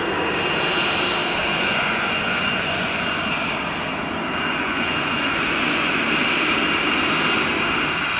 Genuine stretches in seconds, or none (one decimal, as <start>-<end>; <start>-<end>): 0.0-1.4; 3.2-4.5; 6.0-8.2